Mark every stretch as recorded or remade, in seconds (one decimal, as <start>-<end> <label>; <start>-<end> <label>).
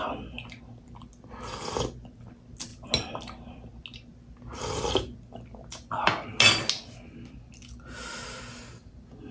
0.0-9.3 recorded